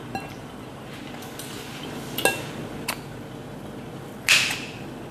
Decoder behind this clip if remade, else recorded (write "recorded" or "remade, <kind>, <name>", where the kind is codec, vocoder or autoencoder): recorded